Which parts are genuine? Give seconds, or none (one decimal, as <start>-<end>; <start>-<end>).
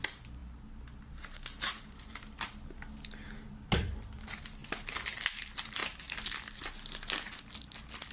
0.0-8.1